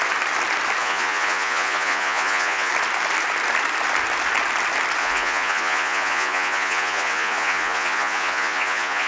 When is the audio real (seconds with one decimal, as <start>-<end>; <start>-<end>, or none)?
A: 0.0-0.8; 2.7-5.0